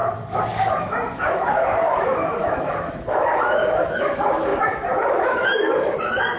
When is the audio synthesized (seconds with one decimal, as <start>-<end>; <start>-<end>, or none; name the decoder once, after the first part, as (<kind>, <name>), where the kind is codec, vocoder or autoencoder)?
0.0-6.4 (autoencoder, DAC-VAE)